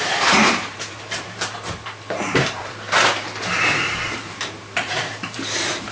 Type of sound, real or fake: fake